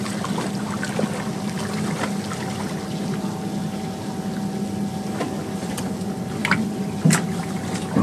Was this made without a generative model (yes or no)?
yes